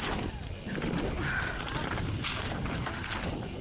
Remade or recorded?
recorded